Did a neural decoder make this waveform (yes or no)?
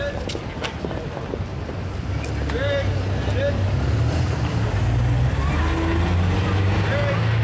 no